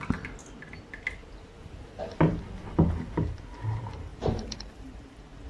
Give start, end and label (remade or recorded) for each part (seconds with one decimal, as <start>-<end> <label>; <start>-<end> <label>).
0.0-4.1 recorded; 4.1-5.5 remade